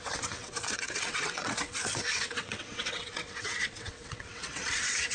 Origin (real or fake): fake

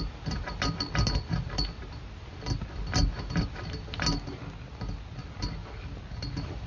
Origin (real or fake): real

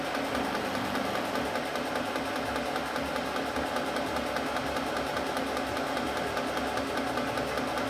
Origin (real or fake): real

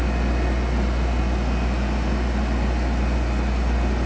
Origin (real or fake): real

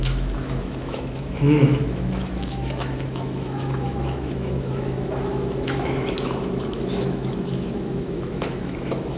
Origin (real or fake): fake